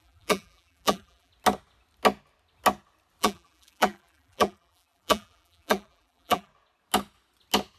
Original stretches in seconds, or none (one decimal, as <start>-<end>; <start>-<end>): 1.3-3.2; 6.5-7.8